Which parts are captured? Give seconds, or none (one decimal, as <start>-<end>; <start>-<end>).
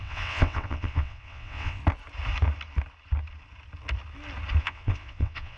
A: 1.8-4.6